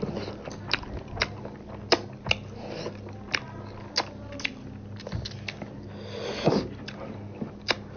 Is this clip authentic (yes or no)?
yes